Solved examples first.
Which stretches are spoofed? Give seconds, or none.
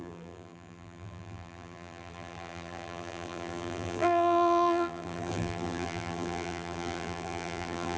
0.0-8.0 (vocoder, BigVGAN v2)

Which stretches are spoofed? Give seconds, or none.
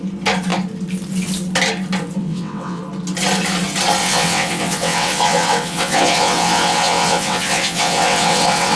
2.2-2.8 (vocoder, WaveNeXt); 4.0-8.8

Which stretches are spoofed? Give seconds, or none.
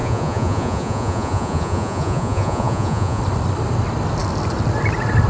0.0-3.2 (vocoder, Vocos)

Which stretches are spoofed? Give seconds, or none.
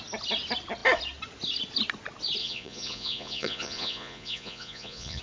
2.4-5.2 (vocoder, Vocos)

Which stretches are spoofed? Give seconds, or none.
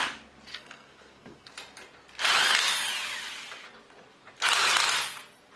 0.5-1.5 (codec, SNAC)